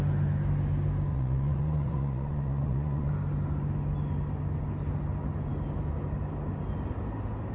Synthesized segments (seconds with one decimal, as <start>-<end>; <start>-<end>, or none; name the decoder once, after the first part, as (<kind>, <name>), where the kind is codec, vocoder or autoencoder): 1.1-3.1 (vocoder, Vocos)